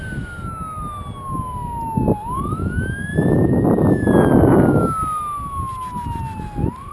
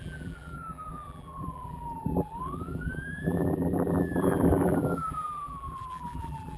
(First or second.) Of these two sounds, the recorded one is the first